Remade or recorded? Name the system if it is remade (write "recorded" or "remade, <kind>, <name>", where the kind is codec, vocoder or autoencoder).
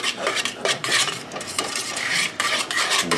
remade, vocoder, BigVGAN v2